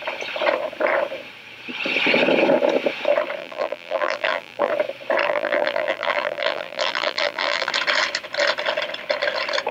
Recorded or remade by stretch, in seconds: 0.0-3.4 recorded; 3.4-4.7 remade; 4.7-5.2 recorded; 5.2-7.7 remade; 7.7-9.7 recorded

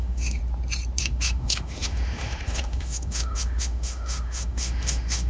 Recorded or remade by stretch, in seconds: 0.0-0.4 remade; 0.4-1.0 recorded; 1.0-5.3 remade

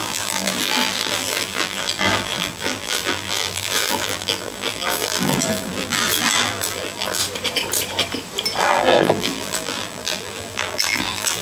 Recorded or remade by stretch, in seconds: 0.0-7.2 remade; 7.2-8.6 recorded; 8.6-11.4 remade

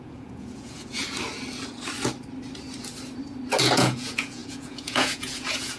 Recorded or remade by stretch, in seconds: 0.0-1.0 remade; 1.0-3.6 recorded; 3.6-5.8 remade

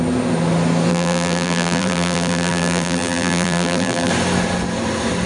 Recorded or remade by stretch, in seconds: 0.0-0.9 recorded; 0.9-4.1 remade; 4.1-5.3 recorded